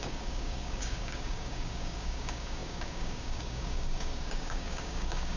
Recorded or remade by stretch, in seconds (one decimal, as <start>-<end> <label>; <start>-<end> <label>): 0.0-5.4 remade